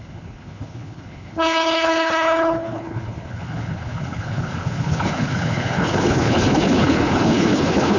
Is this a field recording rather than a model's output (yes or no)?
no